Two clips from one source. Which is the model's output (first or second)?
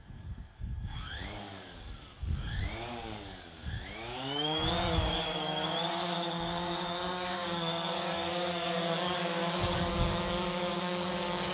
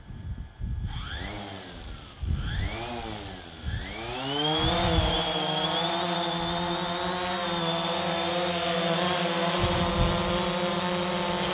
first